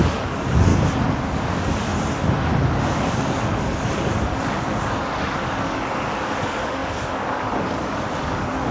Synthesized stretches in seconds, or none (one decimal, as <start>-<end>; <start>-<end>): 0.0-0.7; 1.3-1.9; 2.8-8.7